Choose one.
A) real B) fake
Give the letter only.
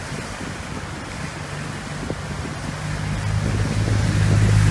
A